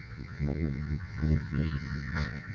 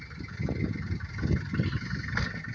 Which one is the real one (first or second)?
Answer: second